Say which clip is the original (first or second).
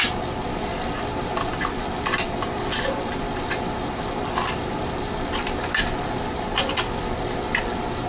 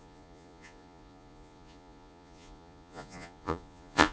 first